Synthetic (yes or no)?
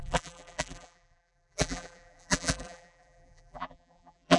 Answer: yes